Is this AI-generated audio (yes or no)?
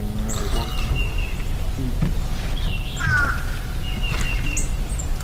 no